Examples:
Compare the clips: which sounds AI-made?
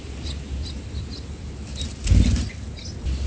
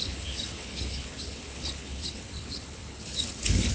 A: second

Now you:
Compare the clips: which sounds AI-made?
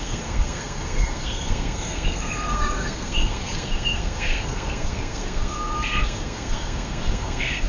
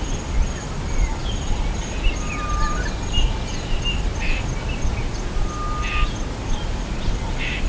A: first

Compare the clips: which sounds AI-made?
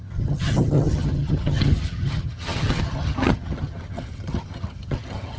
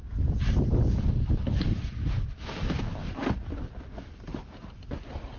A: first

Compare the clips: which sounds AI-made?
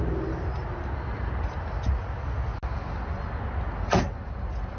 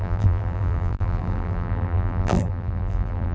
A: second